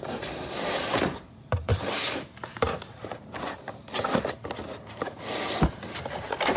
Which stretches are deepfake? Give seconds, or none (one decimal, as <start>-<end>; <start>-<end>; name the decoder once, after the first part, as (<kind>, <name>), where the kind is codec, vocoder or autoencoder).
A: 0.0-1.7 (vocoder, BigVGAN v2); 5.7-6.6